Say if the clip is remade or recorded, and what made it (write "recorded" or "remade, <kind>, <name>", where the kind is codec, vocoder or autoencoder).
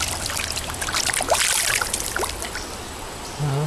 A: recorded